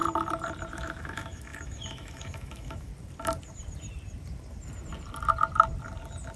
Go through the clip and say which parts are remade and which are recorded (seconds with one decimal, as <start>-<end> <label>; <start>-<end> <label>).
0.0-0.7 recorded; 0.7-2.9 remade; 2.9-6.4 recorded